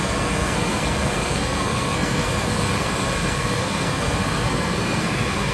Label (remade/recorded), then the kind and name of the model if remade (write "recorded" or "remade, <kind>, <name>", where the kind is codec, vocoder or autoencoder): remade, codec, SNAC